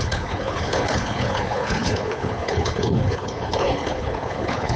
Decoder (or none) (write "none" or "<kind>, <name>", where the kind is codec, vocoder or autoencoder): codec, HILCodec